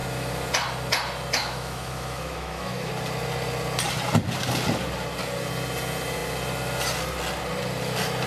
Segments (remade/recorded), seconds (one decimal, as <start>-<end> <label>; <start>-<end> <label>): 0.0-1.4 recorded; 1.4-2.9 remade; 2.9-8.3 recorded